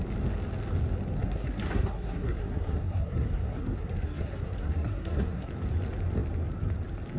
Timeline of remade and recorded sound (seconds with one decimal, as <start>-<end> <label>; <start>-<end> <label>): 0.0-1.2 recorded; 1.2-5.5 remade; 5.5-7.2 recorded